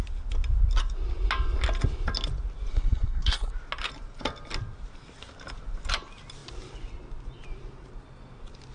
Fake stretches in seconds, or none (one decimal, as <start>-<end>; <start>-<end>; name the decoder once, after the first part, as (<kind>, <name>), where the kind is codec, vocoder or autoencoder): 2.7-3.5 (codec, SNAC)